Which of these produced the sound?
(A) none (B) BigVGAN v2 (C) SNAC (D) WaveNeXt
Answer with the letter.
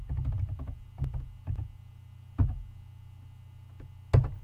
A